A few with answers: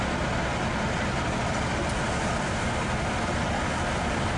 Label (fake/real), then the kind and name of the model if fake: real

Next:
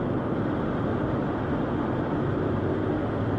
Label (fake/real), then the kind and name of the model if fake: real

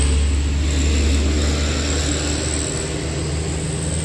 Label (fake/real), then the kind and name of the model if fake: real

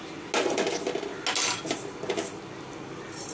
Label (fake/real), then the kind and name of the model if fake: real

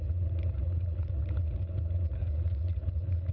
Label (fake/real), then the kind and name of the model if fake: fake, vocoder, Vocos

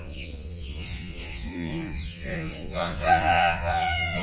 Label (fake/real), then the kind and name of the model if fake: fake, vocoder, Vocos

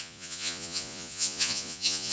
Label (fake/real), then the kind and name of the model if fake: fake, vocoder, Vocos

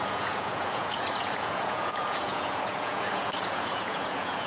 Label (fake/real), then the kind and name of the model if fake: fake, vocoder, Vocos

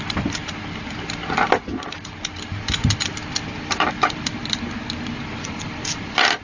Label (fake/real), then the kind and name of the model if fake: real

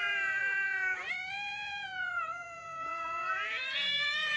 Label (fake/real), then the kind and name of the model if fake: fake, vocoder, Vocos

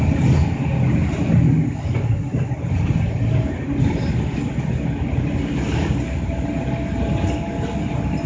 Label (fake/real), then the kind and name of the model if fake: real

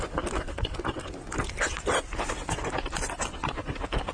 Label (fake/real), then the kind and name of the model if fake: real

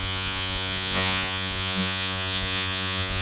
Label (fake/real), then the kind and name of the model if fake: fake, vocoder, Vocos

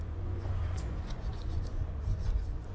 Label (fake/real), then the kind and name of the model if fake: fake, vocoder, Vocos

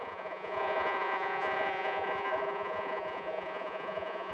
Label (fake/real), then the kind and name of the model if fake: fake, vocoder, Vocos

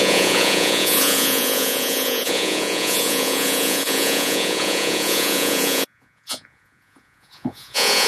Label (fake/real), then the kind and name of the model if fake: fake, vocoder, Vocos